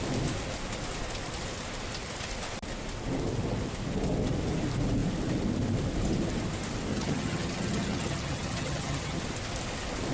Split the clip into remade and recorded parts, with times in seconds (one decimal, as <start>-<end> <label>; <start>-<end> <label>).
0.0-6.9 recorded; 6.9-9.2 remade; 9.2-10.1 recorded